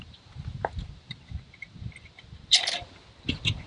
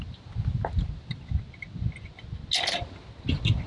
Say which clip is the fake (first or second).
first